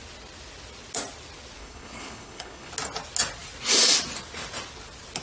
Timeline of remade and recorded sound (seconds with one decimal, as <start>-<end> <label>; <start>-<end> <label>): 0.0-1.6 recorded; 1.6-2.7 remade; 2.7-5.2 recorded